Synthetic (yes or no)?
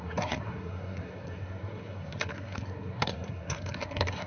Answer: yes